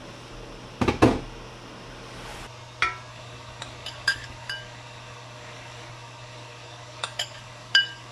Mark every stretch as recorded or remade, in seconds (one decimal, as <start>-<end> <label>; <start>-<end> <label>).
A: 0.0-3.1 recorded; 3.1-8.1 remade